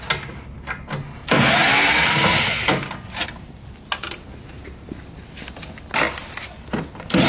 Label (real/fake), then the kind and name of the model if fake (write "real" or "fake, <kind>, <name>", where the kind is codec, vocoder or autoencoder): real